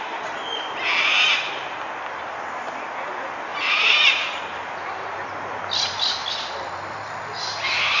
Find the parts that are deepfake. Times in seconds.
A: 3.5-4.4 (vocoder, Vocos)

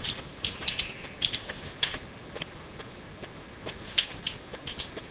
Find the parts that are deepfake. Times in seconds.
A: none

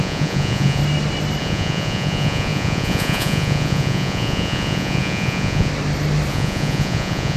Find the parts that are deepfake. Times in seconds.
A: 0.0-0.8 (vocoder, Vocos); 1.4-5.7; 6.3-7.4